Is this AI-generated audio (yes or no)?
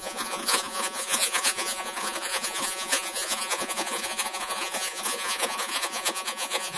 yes